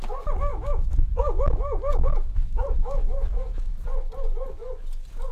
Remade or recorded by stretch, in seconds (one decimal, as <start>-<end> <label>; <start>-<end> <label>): 0.0-0.5 recorded; 0.5-3.7 remade; 3.7-5.3 recorded